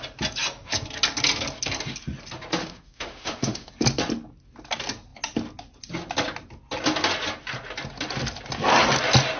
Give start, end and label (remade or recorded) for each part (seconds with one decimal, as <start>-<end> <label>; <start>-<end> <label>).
0.0-2.6 recorded; 2.6-3.7 remade; 3.7-9.4 recorded